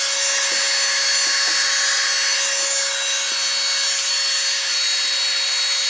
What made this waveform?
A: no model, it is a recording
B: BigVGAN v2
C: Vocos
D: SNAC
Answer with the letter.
A